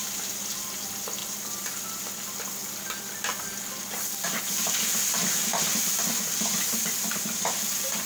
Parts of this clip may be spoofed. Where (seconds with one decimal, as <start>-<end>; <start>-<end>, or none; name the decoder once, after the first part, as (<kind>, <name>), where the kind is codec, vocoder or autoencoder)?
0.0-0.5 (vocoder, BigVGAN v2); 1.2-1.7